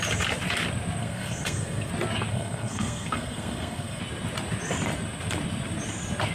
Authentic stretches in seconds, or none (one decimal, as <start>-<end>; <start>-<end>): 0.0-1.0; 1.9-2.3; 4.0-6.3